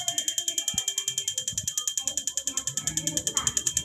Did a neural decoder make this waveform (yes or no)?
no